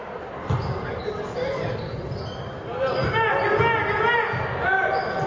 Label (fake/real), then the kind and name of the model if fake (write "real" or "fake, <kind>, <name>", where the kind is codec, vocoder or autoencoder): real